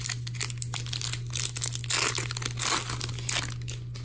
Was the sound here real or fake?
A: real